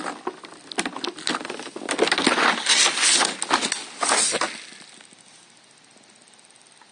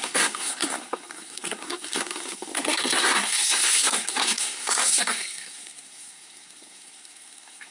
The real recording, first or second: first